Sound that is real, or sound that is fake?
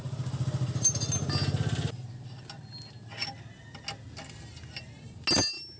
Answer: real